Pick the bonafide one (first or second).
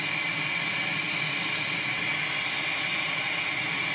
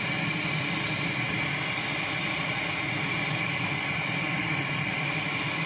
first